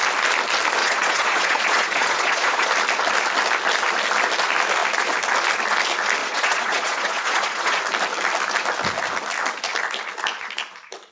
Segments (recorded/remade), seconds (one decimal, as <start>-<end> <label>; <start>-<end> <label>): 0.0-0.8 recorded; 0.8-2.7 remade; 2.7-6.2 recorded; 6.2-7.8 remade; 7.8-11.1 recorded